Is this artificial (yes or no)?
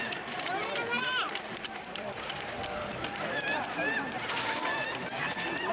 yes